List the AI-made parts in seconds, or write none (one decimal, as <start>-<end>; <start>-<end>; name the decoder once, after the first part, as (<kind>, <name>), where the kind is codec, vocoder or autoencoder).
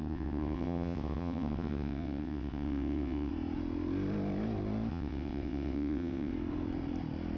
0.0-3.3 (vocoder, WaveNeXt); 4.9-6.3